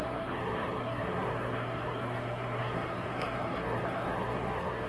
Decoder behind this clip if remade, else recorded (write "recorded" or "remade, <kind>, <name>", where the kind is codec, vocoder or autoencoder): remade, codec, SNAC